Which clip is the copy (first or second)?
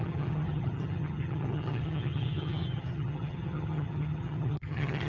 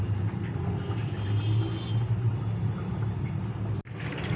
first